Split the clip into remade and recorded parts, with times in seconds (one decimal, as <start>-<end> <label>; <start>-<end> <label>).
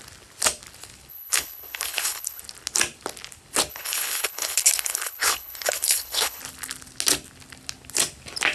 0.0-1.1 recorded; 1.1-2.4 remade; 2.4-3.7 recorded; 3.7-6.4 remade; 6.4-8.5 recorded